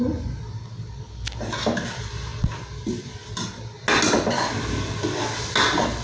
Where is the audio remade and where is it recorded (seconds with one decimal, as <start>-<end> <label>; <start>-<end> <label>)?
0.0-6.0 recorded

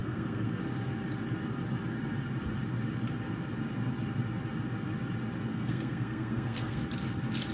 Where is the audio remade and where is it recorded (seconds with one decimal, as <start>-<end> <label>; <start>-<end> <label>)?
0.0-0.6 remade; 0.6-5.5 recorded; 5.5-6.8 remade; 6.8-7.5 recorded

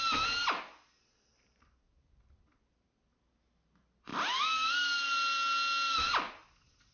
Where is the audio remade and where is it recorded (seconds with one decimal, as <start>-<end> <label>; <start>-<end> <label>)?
0.0-6.9 recorded

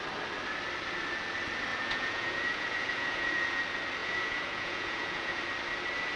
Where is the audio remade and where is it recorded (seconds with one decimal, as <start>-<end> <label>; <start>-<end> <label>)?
0.0-1.7 recorded; 1.7-3.6 remade; 3.6-4.0 recorded; 4.0-5.4 remade; 5.4-6.2 recorded

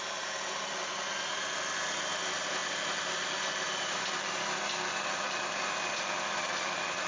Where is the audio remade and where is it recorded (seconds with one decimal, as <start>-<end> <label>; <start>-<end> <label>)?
0.0-7.1 recorded

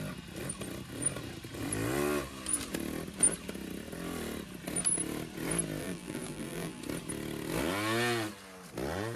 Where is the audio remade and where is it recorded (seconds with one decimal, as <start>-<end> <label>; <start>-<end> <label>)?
0.0-5.8 recorded; 5.8-6.8 remade; 6.8-9.2 recorded

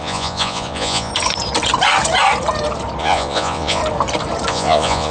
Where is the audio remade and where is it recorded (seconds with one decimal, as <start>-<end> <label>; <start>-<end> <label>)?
0.0-1.1 remade; 1.1-3.0 recorded; 3.0-3.8 remade; 3.8-4.5 recorded; 4.5-5.1 remade